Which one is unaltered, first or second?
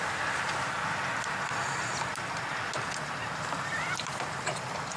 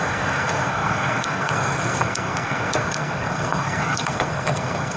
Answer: first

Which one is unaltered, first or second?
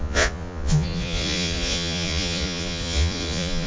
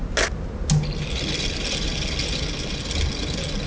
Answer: second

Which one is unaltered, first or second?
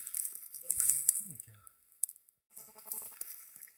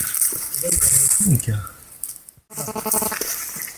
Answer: second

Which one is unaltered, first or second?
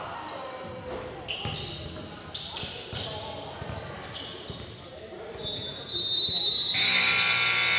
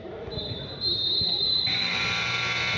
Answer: first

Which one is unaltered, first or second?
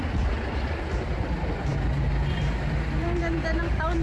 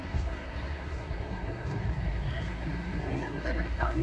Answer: first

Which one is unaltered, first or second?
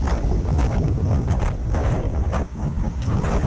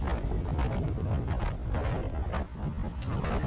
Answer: second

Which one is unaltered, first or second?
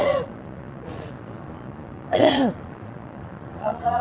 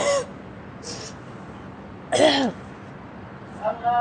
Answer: second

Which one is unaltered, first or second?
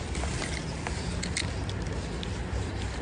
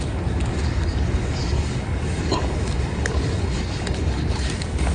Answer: first